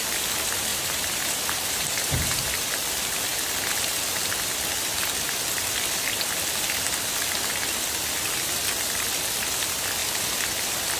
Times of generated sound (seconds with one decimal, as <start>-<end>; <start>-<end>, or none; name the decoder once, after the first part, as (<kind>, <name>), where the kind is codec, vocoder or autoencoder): 0.7-2.5 (vocoder, BigVGAN v2)